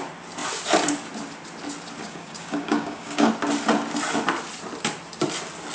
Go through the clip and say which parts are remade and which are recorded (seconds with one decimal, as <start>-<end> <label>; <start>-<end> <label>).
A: 0.0-2.0 recorded; 2.0-3.3 remade; 3.3-5.7 recorded